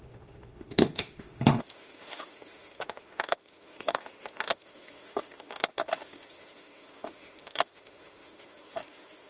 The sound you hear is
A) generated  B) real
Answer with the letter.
A